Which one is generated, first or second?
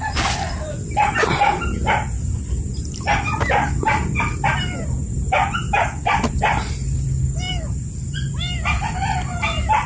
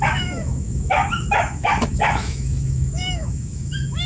second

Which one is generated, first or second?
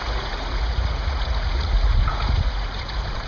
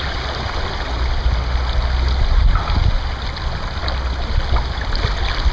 first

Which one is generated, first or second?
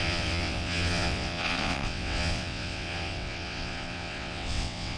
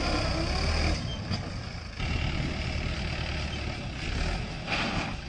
first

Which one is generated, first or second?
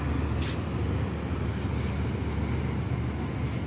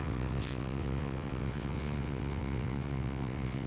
second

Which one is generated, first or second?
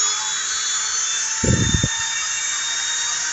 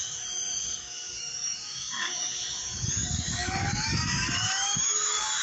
second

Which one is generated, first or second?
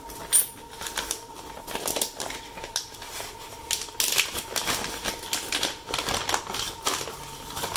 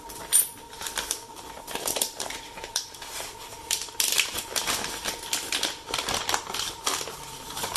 second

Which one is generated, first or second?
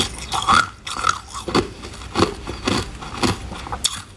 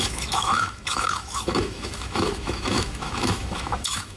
second